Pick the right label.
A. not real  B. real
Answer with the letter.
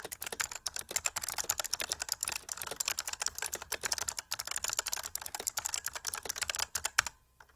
B